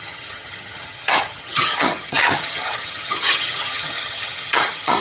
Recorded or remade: remade